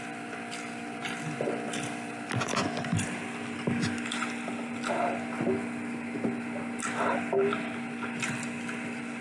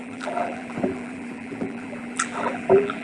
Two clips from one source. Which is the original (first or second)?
first